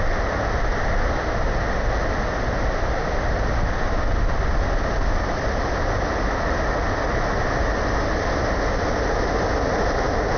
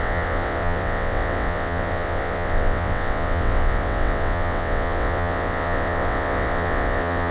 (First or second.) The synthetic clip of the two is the second